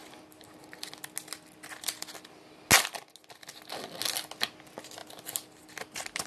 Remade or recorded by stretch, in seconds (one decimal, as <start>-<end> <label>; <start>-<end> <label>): 0.0-6.3 recorded